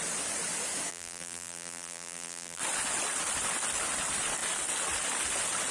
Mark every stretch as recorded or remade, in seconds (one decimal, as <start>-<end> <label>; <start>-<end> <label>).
0.0-0.9 recorded; 0.9-2.6 remade; 2.6-5.7 recorded